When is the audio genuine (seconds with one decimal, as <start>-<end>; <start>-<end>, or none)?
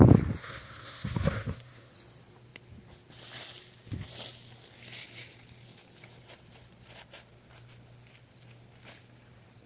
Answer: 0.0-0.4; 1.9-9.7